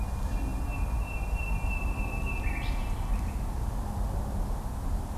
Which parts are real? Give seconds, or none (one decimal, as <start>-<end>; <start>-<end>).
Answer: 0.0-5.2

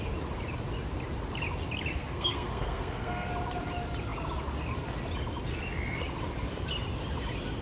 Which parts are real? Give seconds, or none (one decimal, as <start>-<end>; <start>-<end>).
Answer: 0.0-1.9; 3.3-7.6

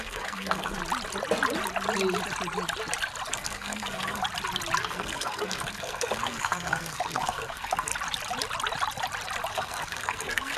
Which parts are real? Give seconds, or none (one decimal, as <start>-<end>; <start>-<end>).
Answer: 0.8-3.3; 4.2-4.8; 7.9-9.5